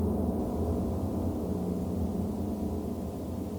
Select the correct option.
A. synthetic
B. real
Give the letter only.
A